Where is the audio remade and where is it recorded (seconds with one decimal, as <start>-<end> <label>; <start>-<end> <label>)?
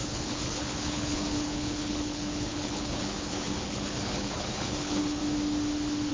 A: 0.0-5.2 remade; 5.2-6.1 recorded